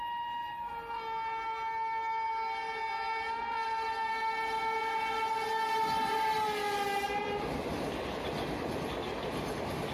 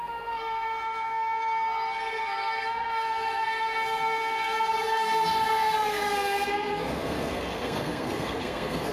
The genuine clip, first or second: first